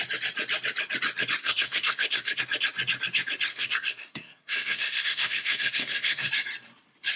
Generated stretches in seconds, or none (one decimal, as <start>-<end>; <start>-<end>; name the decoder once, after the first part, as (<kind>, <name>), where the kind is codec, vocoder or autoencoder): 1.4-2.4 (codec, SNAC); 3.5-6.3